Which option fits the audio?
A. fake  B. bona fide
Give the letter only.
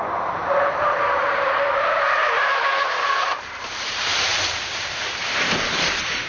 A